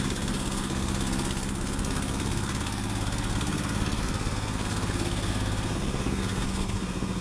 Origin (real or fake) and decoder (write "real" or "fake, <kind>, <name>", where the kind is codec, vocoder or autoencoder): fake, codec, SNAC